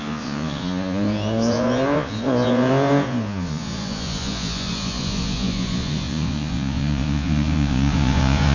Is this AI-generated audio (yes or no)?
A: yes